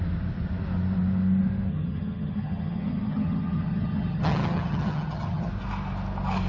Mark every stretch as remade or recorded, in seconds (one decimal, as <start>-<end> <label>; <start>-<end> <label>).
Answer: 0.0-1.7 recorded; 1.7-5.5 remade; 5.5-6.5 recorded